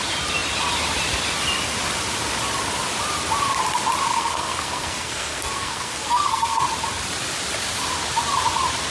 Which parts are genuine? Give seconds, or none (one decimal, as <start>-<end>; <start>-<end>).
0.0-4.1; 6.6-8.9